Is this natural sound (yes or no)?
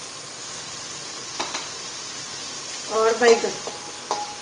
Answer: yes